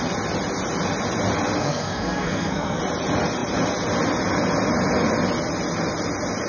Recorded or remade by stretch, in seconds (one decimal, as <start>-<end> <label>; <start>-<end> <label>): 0.0-1.6 recorded; 1.6-2.8 remade; 2.8-6.5 recorded